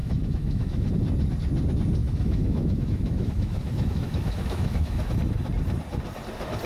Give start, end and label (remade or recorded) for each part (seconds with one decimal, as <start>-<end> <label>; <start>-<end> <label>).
0.0-0.9 remade; 0.9-2.0 recorded; 2.0-5.1 remade; 5.1-6.7 recorded